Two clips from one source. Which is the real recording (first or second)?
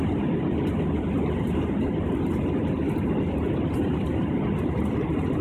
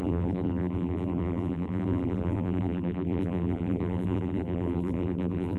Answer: first